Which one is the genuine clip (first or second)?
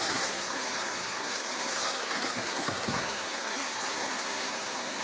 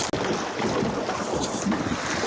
second